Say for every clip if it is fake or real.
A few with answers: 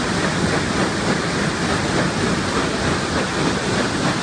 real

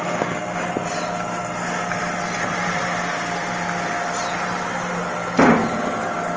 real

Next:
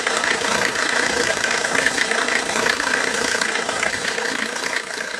fake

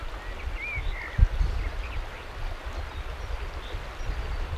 real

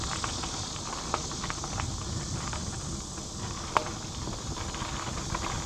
real